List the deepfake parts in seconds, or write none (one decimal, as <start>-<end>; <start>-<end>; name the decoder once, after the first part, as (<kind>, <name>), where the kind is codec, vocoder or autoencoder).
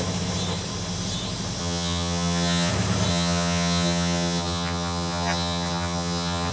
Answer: 1.6-2.7 (vocoder, HiFi-GAN); 3.1-6.5